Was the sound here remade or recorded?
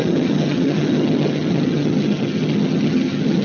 remade